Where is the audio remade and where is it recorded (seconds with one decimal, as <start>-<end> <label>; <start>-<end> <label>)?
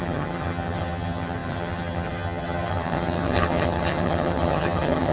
0.0-5.1 remade